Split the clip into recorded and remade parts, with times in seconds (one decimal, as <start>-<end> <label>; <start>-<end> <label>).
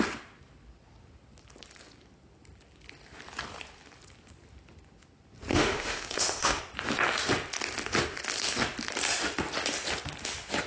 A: 0.0-5.5 recorded; 5.5-6.6 remade; 6.6-10.7 recorded